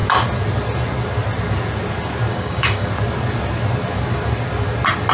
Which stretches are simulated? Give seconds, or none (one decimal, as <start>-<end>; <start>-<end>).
2.3-2.9

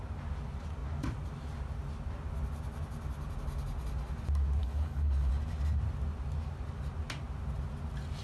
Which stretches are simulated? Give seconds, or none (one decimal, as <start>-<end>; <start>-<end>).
4.6-5.3

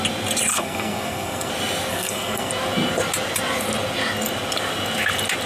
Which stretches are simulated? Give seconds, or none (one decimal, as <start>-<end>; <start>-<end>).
0.5-1.5; 1.9-2.5

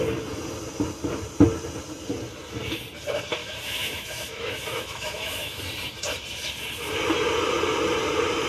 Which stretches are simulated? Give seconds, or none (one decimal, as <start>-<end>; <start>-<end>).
3.4-5.6

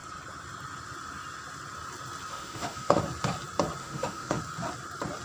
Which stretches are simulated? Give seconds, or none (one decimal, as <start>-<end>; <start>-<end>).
2.3-3.0; 3.8-4.4